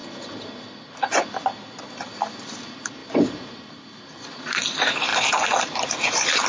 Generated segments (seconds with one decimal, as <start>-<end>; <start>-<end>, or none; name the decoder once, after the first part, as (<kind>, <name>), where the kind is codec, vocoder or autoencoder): 1.8-6.5 (vocoder, BigVGAN v2)